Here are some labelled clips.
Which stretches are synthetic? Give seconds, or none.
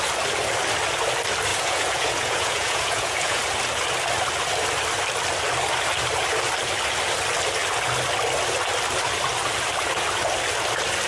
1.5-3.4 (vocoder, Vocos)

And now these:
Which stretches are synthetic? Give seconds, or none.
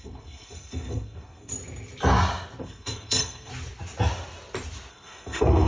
0.0-1.5 (codec, SNAC); 2.6-3.5; 4.9-5.7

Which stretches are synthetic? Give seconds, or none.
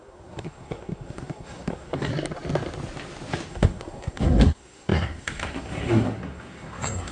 0.0-2.1 (codec, SNAC); 3.5-7.1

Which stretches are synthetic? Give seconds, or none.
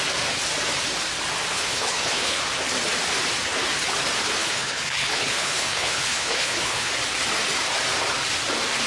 1.5-2.4 (codec, HILCodec); 4.4-6.9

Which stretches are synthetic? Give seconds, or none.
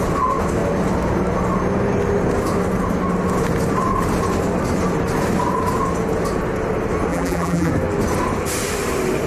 7.1-7.7 (vocoder, BigVGAN v2)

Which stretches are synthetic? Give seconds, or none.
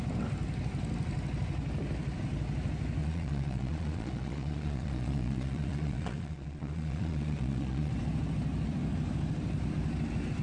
3.0-7.9 (vocoder, Vocos)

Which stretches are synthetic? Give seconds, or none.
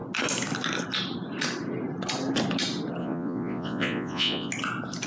3.0-4.5 (vocoder, Vocos)